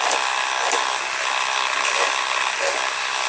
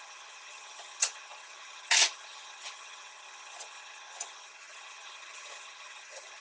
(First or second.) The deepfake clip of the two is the second